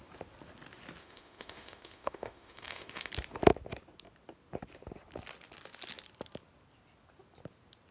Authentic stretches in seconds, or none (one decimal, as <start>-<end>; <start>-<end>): 0.0-1.0; 3.1-7.9

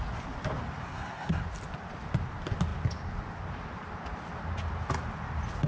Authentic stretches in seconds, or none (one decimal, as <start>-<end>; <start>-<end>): 0.0-0.8; 1.4-5.7

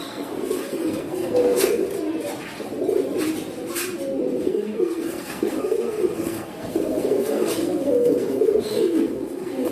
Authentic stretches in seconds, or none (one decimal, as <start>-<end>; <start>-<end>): 1.8-4.4

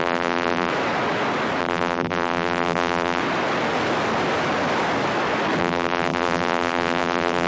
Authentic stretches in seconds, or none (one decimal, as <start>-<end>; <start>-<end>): 0.7-1.6; 3.2-5.6

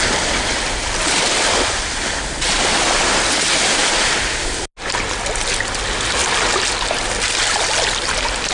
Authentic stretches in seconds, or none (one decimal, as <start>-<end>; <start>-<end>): 0.0-8.5

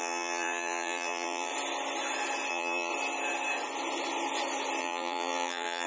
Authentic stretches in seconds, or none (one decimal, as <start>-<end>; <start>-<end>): 1.5-2.5; 2.9-4.8